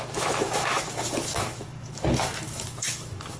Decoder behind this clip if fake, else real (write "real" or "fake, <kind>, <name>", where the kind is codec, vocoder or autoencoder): fake, autoencoder, DAC-VAE